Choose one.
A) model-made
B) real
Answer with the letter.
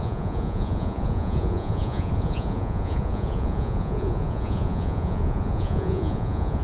A